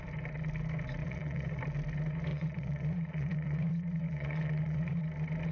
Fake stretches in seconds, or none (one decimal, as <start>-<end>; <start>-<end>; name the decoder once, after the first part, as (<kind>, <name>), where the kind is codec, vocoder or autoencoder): 1.0-1.6 (vocoder, Vocos); 2.3-5.0